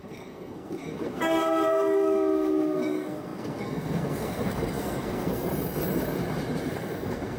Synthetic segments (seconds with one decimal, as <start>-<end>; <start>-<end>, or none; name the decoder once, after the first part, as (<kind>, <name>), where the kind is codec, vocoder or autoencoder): 0.0-5.5 (codec, SNAC); 6.6-7.4